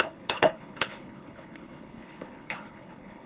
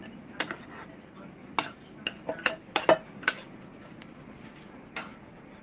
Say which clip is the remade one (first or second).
first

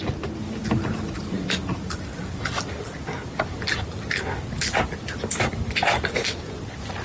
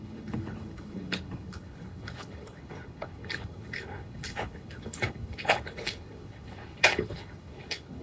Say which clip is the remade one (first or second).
second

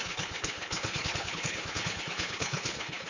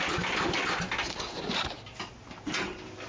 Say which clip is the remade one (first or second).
first